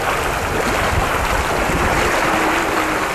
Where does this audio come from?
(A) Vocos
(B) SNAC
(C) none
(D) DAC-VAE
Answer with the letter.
C